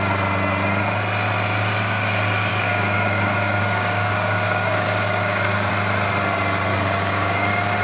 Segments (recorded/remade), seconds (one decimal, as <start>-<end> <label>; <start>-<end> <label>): 0.0-2.5 recorded; 2.5-5.7 remade; 5.7-6.7 recorded; 6.7-7.8 remade